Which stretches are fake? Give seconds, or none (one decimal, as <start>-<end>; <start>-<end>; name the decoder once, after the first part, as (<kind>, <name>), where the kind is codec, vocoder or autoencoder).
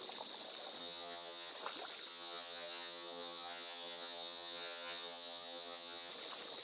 0.8-1.5 (vocoder, HiFi-GAN); 2.1-6.1